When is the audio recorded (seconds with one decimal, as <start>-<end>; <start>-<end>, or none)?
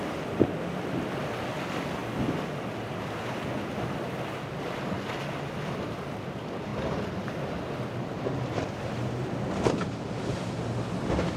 0.0-11.4